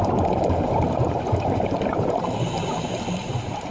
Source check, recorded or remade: remade